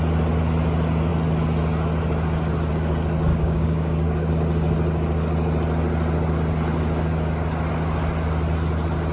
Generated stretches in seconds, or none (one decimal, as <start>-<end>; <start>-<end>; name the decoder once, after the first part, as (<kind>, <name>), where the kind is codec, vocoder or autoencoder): 3.3-4.3 (codec, DAC)